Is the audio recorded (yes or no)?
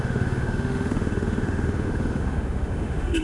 no